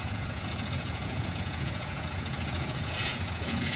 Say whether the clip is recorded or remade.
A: remade